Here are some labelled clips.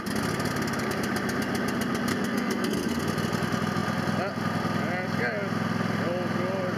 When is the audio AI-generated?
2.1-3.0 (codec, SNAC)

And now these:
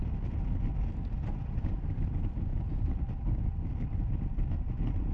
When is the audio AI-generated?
none

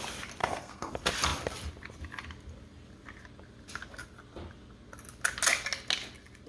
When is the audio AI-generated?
0.4-0.9 (codec, SNAC)

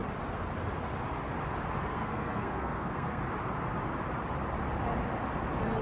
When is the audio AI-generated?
1.8-3.2 (codec, SNAC)